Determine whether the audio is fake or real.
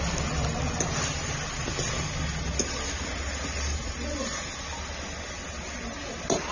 real